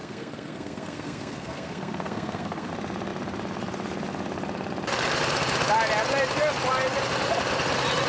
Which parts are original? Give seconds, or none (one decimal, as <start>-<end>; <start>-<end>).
2.7-8.1